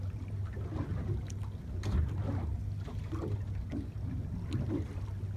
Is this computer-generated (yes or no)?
no